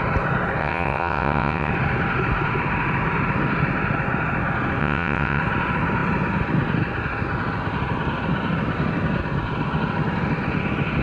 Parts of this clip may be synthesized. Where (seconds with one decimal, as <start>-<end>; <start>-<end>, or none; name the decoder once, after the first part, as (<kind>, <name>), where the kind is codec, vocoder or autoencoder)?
0.6-1.7 (vocoder, WaveNeXt); 4.8-5.4